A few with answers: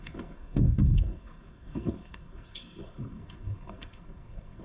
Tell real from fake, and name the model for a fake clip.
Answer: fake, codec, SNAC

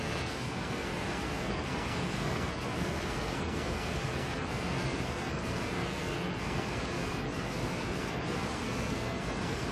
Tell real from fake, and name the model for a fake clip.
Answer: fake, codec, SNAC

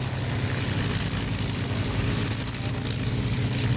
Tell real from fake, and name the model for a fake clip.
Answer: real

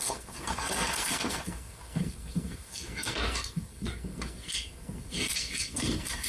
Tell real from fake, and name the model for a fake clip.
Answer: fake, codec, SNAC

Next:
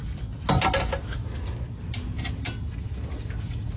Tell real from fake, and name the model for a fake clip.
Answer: real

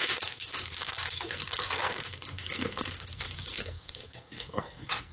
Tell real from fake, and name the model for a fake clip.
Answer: fake, codec, SNAC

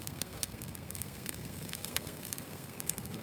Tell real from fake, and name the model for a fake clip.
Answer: fake, codec, SNAC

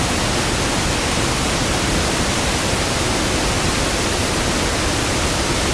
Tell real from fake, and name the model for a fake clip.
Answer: real